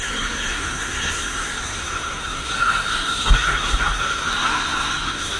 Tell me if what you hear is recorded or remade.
remade